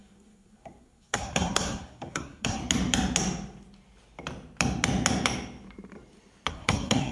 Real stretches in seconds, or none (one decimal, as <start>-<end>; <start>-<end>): 2.6-6.5